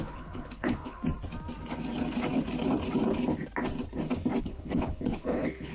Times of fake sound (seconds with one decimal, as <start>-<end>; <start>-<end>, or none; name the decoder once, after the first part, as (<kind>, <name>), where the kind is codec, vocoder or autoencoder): 0.0-1.0 (codec, HILCodec); 4.4-5.7